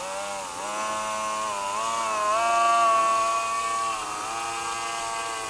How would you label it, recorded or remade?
recorded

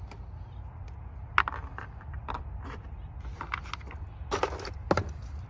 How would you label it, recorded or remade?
recorded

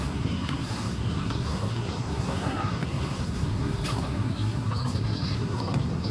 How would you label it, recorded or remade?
remade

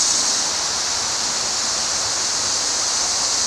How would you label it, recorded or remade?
recorded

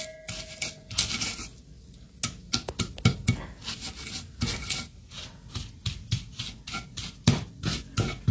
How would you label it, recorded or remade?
recorded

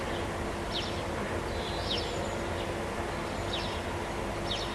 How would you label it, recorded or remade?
recorded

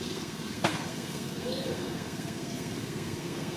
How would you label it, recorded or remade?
remade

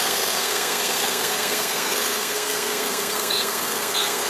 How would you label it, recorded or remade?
remade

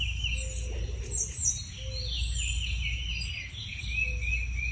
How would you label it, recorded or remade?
recorded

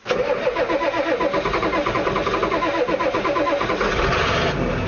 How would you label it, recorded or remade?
recorded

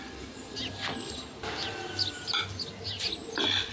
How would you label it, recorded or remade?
recorded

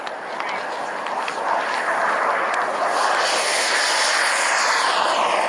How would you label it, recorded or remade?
recorded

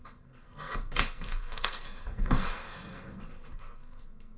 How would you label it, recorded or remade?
remade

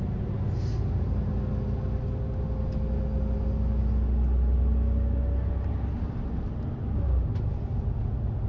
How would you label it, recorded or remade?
recorded